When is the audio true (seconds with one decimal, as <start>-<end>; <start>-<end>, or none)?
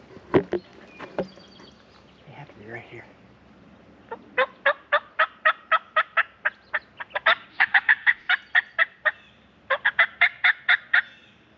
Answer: 0.0-7.5; 8.3-11.6